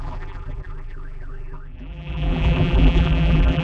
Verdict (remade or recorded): remade